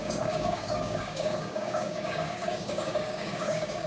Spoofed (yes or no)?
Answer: yes